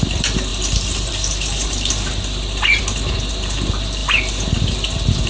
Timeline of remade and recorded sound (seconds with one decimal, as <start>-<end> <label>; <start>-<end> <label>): 0.0-0.5 recorded; 0.5-2.8 remade; 2.8-5.3 recorded